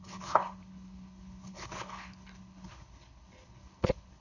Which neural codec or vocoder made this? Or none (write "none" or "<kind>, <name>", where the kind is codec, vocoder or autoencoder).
codec, HILCodec